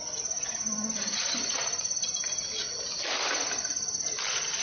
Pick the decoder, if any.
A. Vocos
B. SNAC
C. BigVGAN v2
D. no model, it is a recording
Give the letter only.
D